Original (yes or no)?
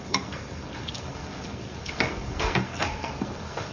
no